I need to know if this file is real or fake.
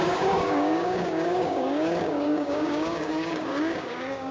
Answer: fake